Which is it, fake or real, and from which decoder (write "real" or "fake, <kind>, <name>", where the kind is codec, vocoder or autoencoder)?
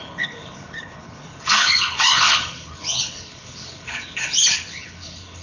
fake, codec, HILCodec